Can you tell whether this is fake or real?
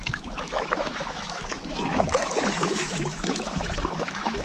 fake